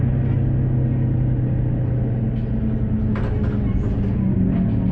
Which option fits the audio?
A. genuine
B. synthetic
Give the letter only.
A